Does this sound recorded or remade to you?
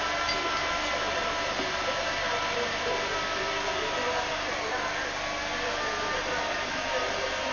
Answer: recorded